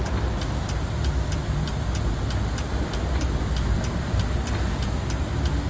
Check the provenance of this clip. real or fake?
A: real